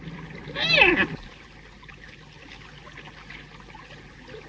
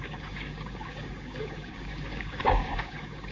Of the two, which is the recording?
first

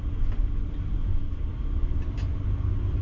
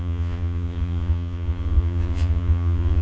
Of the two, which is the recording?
first